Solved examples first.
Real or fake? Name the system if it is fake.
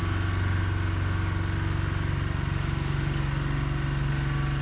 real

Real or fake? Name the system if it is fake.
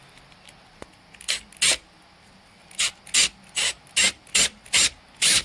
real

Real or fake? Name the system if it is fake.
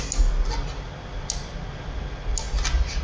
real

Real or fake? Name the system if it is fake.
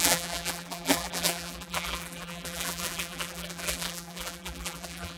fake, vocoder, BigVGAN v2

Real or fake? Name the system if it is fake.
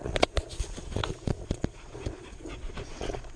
fake, vocoder, Vocos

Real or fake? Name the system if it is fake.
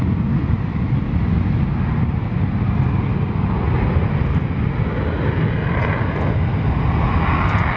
real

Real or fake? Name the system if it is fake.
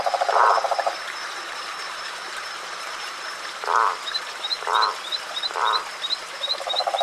fake, vocoder, BigVGAN v2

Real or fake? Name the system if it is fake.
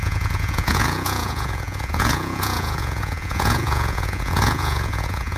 fake, vocoder, Vocos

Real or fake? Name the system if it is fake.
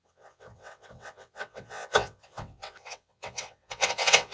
fake, vocoder, WaveNeXt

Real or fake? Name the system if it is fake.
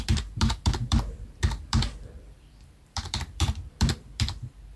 fake, vocoder, BigVGAN v2